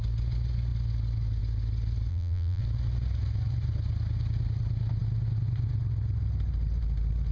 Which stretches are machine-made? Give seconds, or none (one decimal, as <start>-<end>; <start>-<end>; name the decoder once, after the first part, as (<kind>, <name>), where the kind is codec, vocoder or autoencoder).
2.1-2.6 (vocoder, BigVGAN v2)

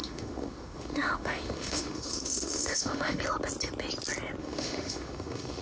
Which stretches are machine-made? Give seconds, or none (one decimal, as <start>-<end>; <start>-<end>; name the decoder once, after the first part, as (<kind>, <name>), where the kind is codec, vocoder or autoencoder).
0.0-3.2 (autoencoder, DAC-VAE); 4.4-5.6

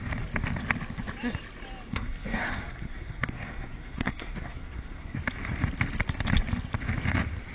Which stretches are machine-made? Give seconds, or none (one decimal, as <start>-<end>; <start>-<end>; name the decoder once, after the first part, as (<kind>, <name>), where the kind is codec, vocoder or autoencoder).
1.9-5.2 (codec, SNAC)

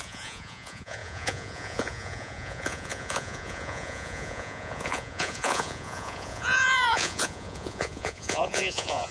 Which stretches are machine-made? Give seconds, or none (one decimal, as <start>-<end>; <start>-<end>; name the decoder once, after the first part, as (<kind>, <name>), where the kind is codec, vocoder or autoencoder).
0.0-9.1 (vocoder, Vocos)

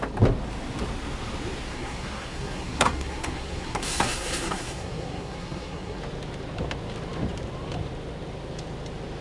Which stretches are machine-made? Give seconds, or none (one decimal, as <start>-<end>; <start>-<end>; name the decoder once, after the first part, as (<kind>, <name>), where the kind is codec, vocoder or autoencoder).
1.7-6.0 (codec, SNAC)

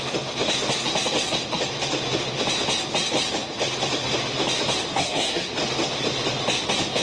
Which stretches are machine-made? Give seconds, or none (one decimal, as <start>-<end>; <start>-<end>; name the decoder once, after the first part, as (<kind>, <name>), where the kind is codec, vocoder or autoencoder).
4.9-5.5 (codec, SNAC)